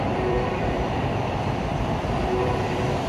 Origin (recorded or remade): remade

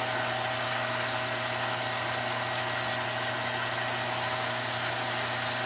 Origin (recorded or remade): recorded